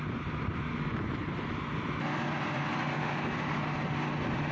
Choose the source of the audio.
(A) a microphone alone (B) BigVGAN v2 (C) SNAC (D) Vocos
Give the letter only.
A